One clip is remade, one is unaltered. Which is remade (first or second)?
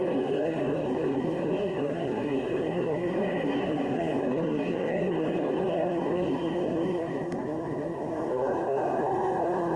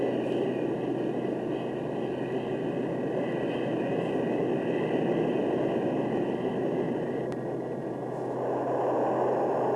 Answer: first